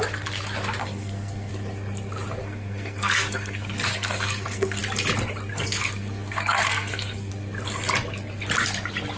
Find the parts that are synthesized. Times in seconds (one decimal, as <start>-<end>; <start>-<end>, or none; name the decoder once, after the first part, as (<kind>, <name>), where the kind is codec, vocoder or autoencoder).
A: 0.8-1.5 (codec, SNAC); 2.4-4.8; 5.5-7.3